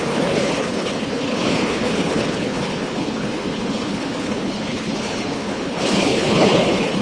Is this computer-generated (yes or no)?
yes